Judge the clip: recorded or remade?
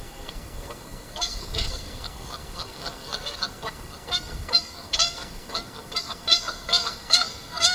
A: remade